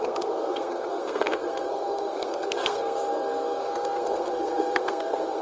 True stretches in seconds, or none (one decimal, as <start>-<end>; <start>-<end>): none